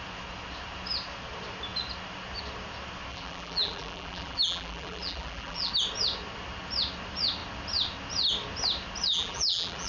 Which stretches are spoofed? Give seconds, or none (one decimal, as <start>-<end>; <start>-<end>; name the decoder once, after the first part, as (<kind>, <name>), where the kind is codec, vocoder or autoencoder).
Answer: 3.1-5.7 (vocoder, BigVGAN v2); 9.1-9.9